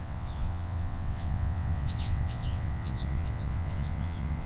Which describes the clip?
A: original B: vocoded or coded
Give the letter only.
B